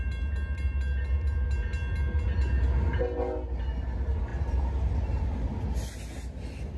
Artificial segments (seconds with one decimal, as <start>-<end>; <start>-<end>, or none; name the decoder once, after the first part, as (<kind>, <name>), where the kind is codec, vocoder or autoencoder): none